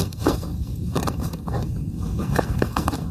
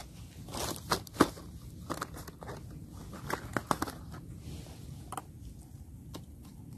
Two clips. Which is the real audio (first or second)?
second